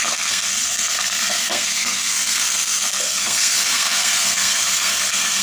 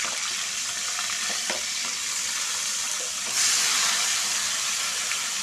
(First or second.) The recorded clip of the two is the second